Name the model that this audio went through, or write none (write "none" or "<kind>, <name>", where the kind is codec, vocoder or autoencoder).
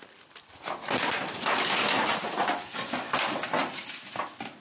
none